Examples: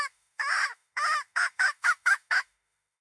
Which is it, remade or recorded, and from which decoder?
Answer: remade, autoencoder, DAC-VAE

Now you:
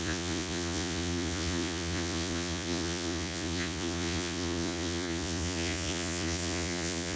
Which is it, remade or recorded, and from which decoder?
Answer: remade, vocoder, Vocos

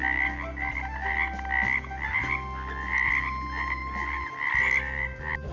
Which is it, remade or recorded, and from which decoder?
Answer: recorded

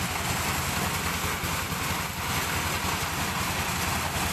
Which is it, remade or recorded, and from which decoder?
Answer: recorded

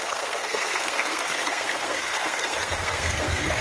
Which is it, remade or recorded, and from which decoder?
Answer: remade, codec, SNAC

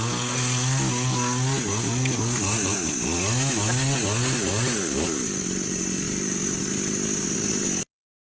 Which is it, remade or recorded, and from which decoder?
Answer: recorded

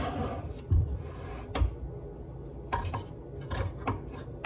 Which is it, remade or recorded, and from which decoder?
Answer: recorded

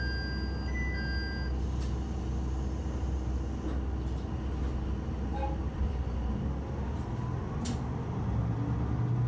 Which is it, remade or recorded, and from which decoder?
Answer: recorded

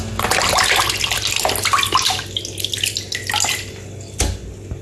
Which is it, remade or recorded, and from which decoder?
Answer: recorded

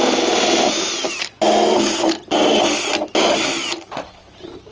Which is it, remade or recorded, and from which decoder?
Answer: recorded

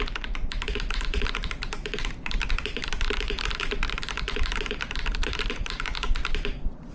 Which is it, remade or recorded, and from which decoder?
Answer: remade, vocoder, BigVGAN v2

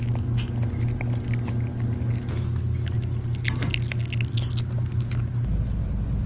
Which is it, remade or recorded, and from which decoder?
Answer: recorded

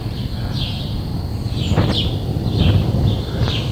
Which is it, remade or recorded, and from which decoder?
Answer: recorded